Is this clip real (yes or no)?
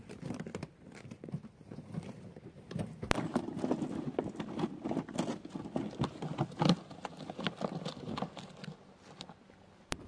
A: yes